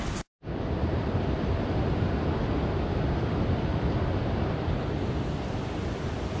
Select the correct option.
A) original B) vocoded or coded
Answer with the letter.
A